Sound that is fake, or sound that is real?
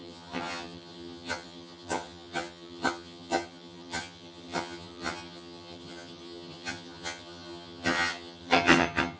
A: fake